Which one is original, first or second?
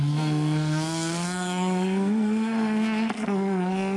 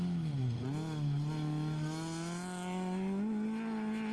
second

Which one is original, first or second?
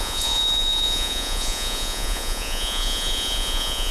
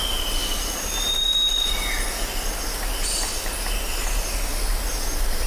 second